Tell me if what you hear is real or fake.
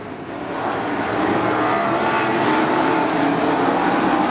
real